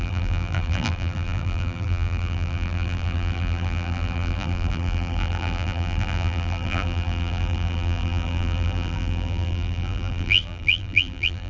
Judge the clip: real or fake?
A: fake